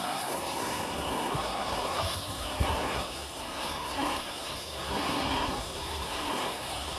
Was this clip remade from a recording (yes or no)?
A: yes